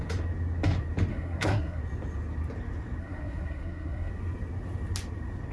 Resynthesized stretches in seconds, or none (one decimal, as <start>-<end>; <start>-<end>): 1.1-1.8; 3.0-4.1

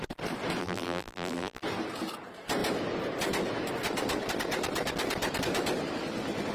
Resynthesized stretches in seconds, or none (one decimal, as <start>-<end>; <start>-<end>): 0.6-1.6

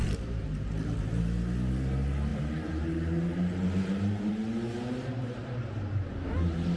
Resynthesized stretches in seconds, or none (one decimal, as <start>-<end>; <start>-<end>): 0.0-1.2; 2.3-4.3; 5.4-6.1

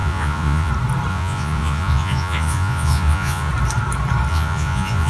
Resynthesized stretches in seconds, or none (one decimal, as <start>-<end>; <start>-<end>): 0.0-0.7; 1.1-3.5; 4.3-5.1